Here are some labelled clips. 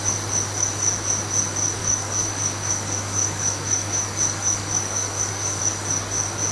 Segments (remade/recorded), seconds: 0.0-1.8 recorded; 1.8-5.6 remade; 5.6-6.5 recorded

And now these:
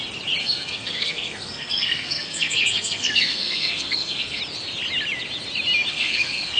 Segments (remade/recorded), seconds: 0.0-0.4 recorded; 0.4-4.4 remade; 4.4-5.9 recorded; 5.9-6.6 remade

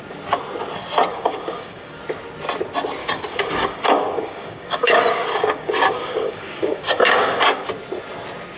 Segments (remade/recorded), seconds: 0.0-1.1 recorded; 1.1-2.0 remade; 2.0-3.0 recorded; 3.0-7.7 remade; 7.7-8.6 recorded

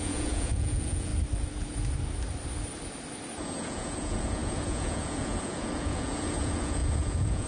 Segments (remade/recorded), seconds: 0.0-1.1 remade; 1.1-3.4 recorded; 3.4-7.5 remade